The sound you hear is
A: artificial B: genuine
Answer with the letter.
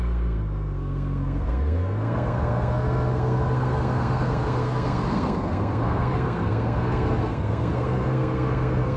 A